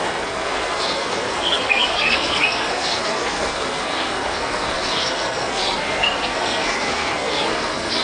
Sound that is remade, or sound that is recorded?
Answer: remade